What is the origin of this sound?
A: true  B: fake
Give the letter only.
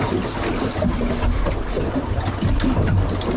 A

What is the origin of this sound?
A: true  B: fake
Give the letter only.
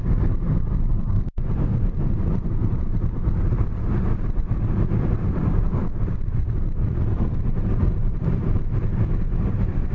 B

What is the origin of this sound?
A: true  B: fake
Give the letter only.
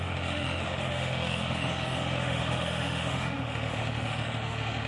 B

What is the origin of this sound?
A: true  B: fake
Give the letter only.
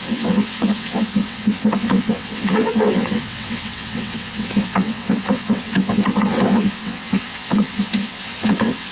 B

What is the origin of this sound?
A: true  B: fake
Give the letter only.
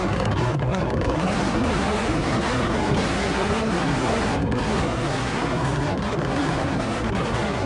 B